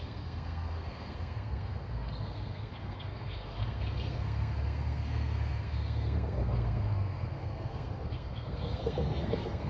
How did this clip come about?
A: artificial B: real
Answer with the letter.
A